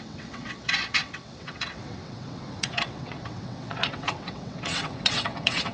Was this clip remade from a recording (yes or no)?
yes